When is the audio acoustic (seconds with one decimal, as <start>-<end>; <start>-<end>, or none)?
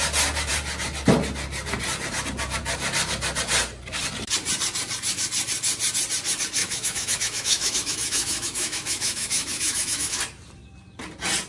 0.0-6.6; 10.2-11.5